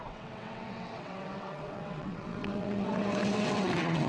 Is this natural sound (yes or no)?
no